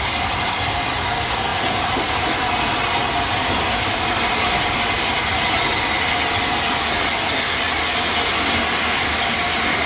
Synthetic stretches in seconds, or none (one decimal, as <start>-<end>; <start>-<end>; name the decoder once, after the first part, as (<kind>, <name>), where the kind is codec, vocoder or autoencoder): none